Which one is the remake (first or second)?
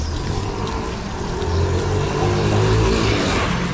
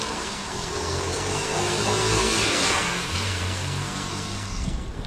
second